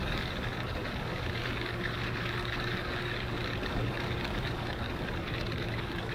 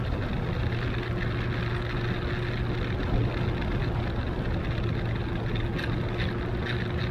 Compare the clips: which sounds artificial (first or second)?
first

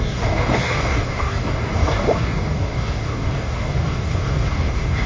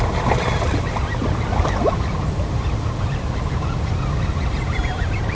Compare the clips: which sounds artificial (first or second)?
first